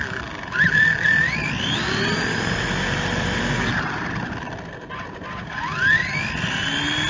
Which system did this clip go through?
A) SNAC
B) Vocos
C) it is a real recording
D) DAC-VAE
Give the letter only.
C